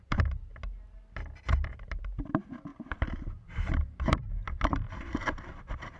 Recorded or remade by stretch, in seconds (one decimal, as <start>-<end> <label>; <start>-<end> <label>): 0.0-0.5 remade; 0.5-1.7 recorded; 1.7-6.0 remade